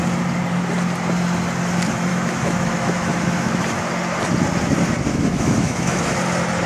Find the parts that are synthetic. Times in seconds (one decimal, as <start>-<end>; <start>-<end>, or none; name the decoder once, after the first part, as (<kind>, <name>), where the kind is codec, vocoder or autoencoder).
2.1-3.8 (autoencoder, DAC-VAE); 5.1-6.2